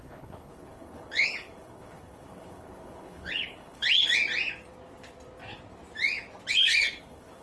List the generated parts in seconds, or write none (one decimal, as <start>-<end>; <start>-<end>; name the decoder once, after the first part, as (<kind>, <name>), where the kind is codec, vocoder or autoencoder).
0.0-4.2 (codec, HILCodec); 6.5-7.4